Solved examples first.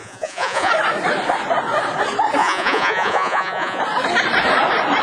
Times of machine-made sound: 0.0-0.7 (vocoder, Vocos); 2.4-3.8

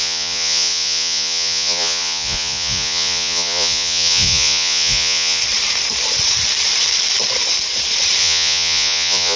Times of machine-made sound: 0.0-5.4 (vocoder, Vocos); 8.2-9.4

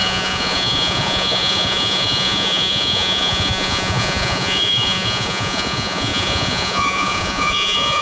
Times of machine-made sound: 0.0-8.0 (vocoder, Vocos)

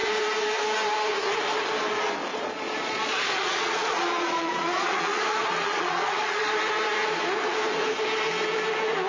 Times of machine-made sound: 2.3-6.5 (vocoder, Vocos)

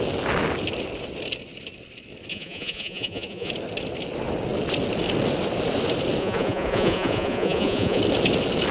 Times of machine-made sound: 2.3-3.5 (vocoder, Vocos); 6.2-8.0